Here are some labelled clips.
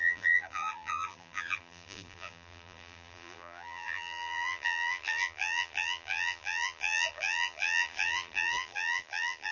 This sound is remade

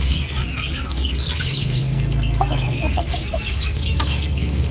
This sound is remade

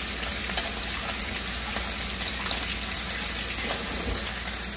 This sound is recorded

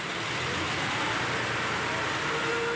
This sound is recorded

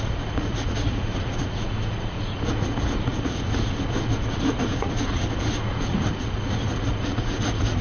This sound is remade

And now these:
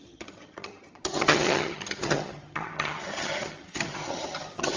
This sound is remade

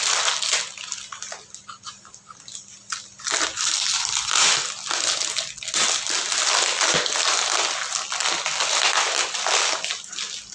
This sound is recorded